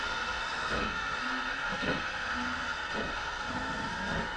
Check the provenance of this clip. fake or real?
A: fake